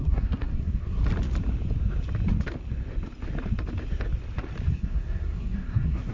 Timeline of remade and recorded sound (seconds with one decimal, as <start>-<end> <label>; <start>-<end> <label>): 0.0-1.0 remade; 1.0-4.7 recorded; 4.7-6.1 remade